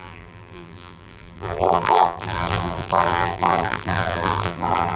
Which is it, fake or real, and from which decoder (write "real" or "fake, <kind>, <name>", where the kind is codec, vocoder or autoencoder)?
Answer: fake, vocoder, BigVGAN v2